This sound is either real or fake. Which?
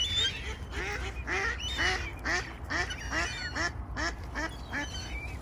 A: real